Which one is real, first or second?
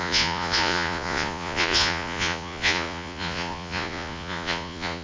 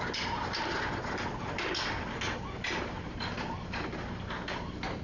second